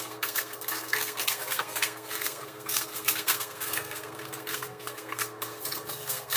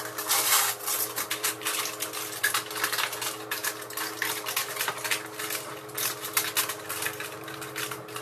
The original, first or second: second